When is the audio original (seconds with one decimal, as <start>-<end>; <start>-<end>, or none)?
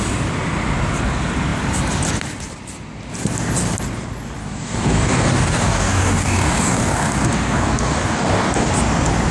0.0-4.4; 8.7-9.3